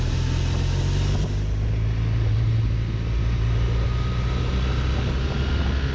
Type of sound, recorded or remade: recorded